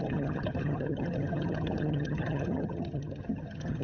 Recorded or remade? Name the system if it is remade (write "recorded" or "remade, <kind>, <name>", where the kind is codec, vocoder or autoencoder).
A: remade, vocoder, HiFi-GAN